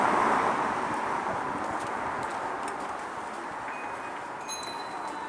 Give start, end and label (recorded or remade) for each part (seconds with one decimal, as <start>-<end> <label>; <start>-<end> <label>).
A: 0.0-5.3 recorded